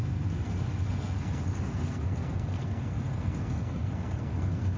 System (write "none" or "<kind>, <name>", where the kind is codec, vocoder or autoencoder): codec, SNAC